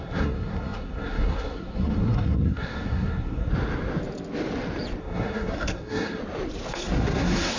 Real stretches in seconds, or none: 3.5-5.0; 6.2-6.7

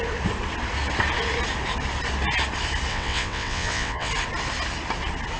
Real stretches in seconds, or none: 0.0-2.9; 4.1-5.4

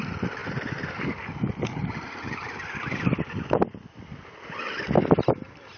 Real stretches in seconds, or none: 0.0-5.8

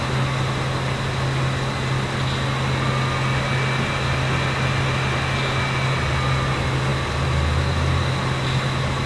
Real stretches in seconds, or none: 0.0-9.1

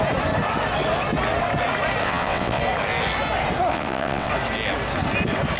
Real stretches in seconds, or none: 0.0-2.0; 2.6-3.7; 4.3-5.6